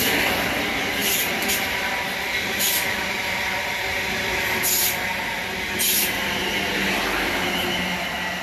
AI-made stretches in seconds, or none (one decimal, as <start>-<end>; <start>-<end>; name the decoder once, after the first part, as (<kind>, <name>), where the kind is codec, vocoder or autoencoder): 1.0-4.6 (vocoder, BigVGAN v2)